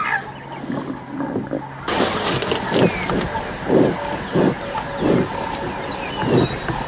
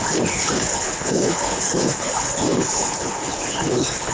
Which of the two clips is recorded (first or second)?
first